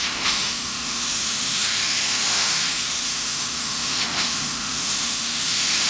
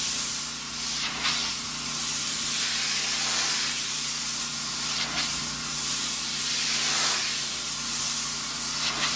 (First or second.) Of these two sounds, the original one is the second